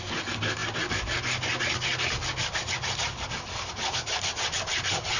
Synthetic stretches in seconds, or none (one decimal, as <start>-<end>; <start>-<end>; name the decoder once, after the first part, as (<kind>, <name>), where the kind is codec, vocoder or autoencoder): none